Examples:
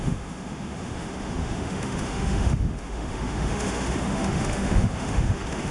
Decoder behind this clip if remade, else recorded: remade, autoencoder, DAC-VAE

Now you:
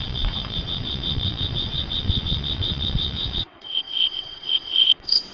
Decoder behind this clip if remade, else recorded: remade, vocoder, WaveNeXt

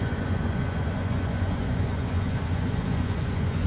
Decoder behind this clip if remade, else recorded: remade, vocoder, Vocos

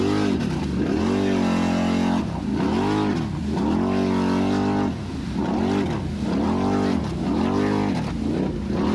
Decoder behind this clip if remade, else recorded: recorded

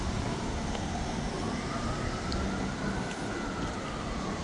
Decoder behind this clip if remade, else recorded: recorded